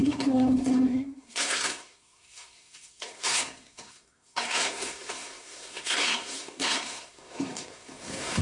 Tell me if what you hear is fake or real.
fake